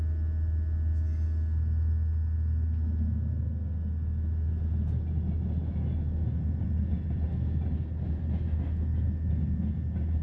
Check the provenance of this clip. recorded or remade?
recorded